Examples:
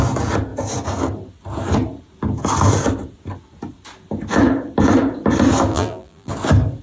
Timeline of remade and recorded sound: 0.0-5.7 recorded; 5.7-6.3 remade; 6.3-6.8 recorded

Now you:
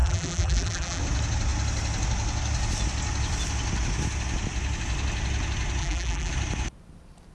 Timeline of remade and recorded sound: 0.0-1.0 remade; 1.0-5.8 recorded; 5.8-6.3 remade; 6.3-7.3 recorded

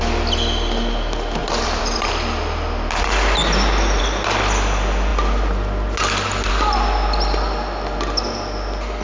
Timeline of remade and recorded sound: 0.0-1.4 recorded; 1.4-2.1 remade; 2.1-3.4 recorded; 3.4-4.0 remade; 4.0-9.0 recorded

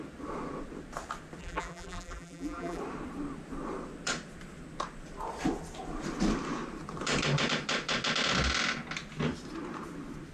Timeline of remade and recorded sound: 0.0-1.4 recorded; 1.4-2.8 remade; 2.8-10.3 recorded